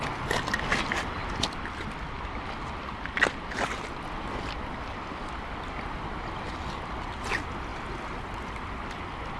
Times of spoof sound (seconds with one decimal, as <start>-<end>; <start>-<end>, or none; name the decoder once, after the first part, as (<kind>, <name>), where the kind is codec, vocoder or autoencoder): none